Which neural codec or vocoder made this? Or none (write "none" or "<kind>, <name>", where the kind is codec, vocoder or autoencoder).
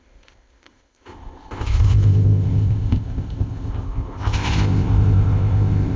codec, ZipCodec